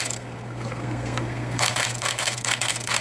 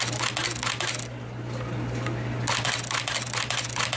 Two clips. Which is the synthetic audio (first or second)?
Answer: first